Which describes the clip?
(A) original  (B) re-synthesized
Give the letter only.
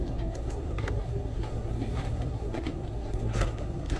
B